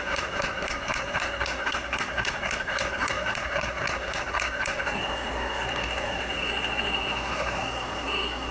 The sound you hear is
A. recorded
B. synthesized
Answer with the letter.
B